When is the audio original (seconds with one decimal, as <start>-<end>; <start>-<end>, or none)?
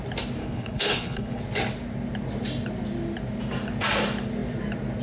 0.0-0.4; 1.4-5.0